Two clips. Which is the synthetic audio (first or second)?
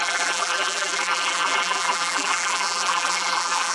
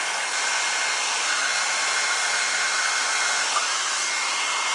first